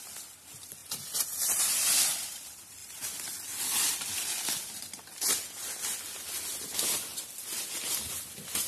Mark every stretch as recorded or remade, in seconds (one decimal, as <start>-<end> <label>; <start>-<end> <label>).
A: 0.0-2.8 recorded; 2.8-4.1 remade; 4.1-8.7 recorded